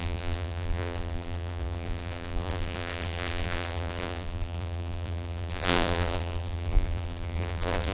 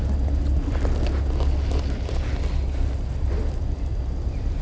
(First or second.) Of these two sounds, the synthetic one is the first